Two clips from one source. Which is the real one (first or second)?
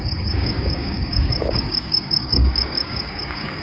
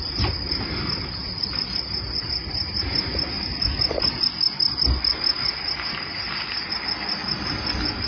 second